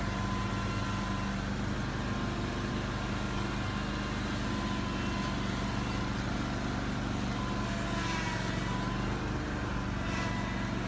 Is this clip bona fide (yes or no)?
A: yes